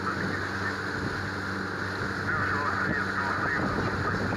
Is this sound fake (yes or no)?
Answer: no